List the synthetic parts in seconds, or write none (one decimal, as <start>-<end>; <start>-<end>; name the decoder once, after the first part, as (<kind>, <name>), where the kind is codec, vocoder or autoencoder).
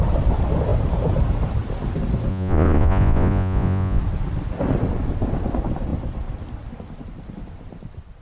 2.3-4.0 (vocoder, Vocos)